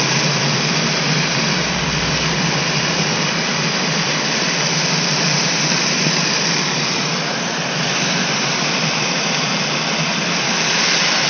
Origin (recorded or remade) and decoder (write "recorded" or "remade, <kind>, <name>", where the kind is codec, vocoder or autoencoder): remade, vocoder, BigVGAN v2